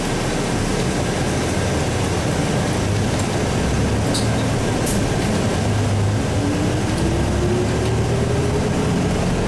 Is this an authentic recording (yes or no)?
yes